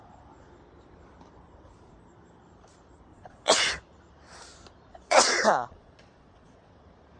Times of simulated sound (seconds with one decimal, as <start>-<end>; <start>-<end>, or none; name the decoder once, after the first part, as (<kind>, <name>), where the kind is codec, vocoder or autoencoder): 3.1-3.7 (vocoder, Vocos); 4.9-6.7